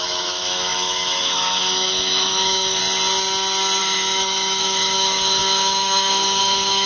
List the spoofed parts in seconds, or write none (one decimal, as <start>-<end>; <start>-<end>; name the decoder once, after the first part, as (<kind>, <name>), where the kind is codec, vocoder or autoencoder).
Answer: 0.0-2.8 (autoencoder, DAC-VAE); 3.8-6.9